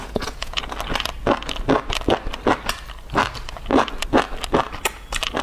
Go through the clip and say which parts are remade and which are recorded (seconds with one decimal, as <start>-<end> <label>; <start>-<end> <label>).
0.0-0.6 remade; 0.6-5.4 recorded